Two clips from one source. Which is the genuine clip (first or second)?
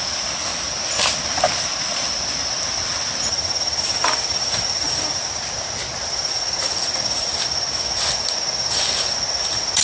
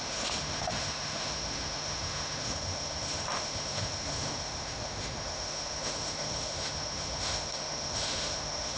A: first